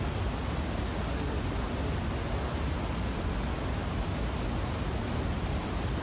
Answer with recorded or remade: recorded